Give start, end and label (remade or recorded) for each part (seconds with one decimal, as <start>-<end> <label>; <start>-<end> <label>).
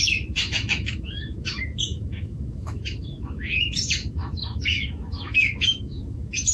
0.0-6.5 remade